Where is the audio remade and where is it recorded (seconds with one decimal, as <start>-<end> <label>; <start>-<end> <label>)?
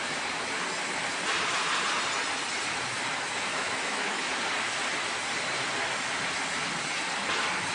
0.0-3.5 recorded; 3.5-4.3 remade; 4.3-7.7 recorded